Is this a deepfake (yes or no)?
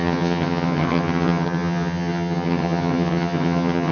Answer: yes